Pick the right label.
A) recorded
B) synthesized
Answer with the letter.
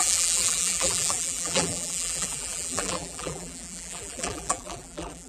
B